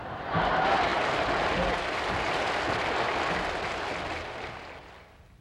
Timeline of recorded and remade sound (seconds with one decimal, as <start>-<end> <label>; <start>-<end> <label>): 0.0-5.4 recorded